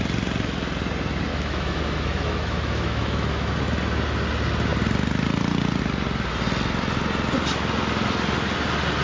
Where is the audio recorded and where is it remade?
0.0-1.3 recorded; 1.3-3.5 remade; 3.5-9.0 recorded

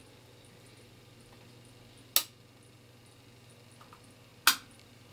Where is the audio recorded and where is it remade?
0.0-5.1 recorded

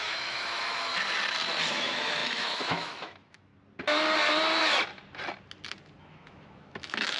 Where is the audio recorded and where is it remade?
0.0-0.9 remade; 0.9-1.7 recorded; 1.7-3.5 remade; 3.5-6.0 recorded; 6.0-7.2 remade

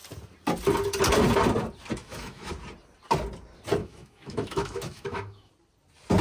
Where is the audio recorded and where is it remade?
0.0-2.0 recorded; 2.0-2.5 remade; 2.5-3.8 recorded; 3.8-5.5 remade; 5.5-6.2 recorded

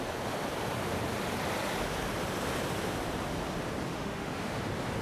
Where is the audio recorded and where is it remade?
0.0-3.9 recorded; 3.9-4.6 remade; 4.6-5.0 recorded

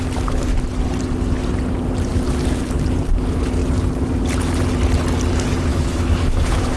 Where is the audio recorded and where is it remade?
0.0-5.7 recorded; 5.7-6.8 remade

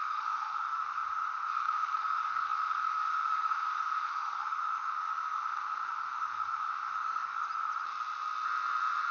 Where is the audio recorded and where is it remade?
0.0-1.0 remade; 1.0-1.6 recorded; 1.6-7.4 remade; 7.4-9.1 recorded

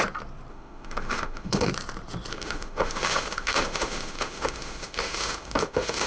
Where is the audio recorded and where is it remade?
0.0-0.5 recorded; 0.5-1.7 remade; 1.7-2.3 recorded; 2.3-6.1 remade